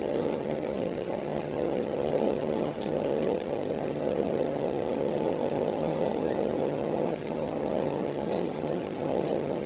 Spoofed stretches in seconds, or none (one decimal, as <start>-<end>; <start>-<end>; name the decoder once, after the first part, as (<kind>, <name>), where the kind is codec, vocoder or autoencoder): 0.0-9.7 (vocoder, HiFi-GAN)